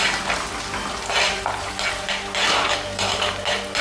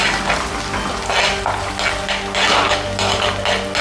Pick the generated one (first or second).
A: first